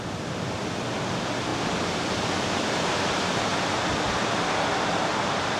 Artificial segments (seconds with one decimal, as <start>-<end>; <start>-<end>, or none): none